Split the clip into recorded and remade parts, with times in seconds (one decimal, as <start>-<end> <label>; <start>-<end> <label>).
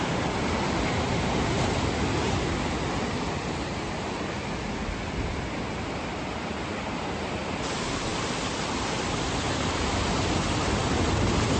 0.0-11.6 recorded